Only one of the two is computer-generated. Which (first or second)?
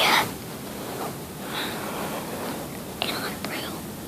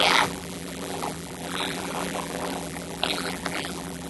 second